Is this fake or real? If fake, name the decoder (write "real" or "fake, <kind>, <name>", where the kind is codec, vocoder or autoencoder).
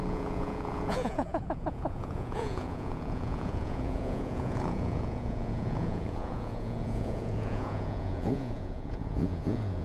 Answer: fake, vocoder, Vocos